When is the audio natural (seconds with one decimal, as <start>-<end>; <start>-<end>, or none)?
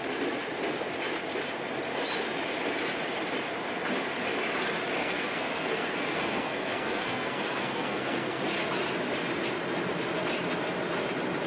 0.0-5.0; 8.4-11.5